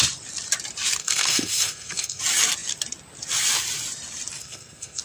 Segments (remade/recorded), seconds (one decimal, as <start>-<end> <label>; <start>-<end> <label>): 0.0-1.0 recorded; 1.0-2.2 remade; 2.2-4.4 recorded; 4.4-5.0 remade